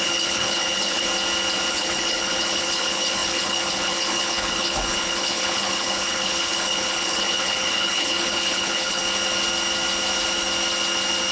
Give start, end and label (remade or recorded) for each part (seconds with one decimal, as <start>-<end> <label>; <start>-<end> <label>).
0.0-1.1 remade; 1.1-1.7 recorded; 1.7-9.0 remade; 9.0-11.3 recorded